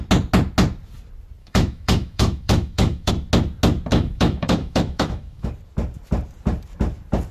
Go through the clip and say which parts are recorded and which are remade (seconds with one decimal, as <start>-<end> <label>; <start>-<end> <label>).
0.0-1.4 recorded; 1.4-3.1 remade; 3.1-3.9 recorded; 3.9-5.5 remade; 5.5-7.3 recorded

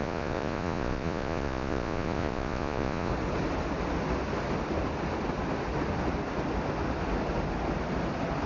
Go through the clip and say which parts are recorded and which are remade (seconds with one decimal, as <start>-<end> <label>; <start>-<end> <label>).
0.0-3.1 remade; 3.1-8.5 recorded